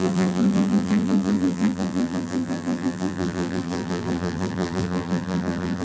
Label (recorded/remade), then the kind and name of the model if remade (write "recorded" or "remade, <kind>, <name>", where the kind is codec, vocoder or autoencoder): remade, vocoder, BigVGAN v2